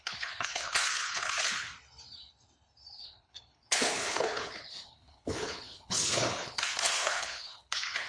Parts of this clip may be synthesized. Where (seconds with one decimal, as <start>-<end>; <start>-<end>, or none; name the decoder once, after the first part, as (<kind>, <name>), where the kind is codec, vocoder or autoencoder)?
0.0-1.7 (codec, HILCodec); 3.0-8.1